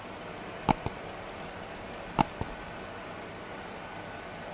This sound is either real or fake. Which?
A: real